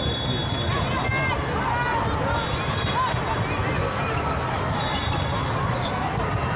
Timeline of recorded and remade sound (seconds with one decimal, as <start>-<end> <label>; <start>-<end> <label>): 0.0-6.6 recorded